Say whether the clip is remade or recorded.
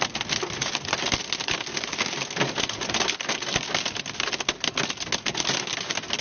recorded